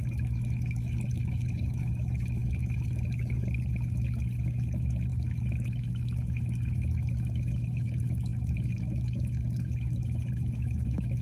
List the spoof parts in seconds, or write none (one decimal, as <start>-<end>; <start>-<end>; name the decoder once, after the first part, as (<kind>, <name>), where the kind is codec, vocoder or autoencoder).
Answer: 0.0-11.2 (autoencoder, DAC-VAE)